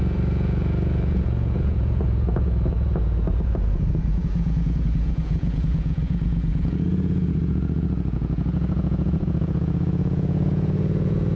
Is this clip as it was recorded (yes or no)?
no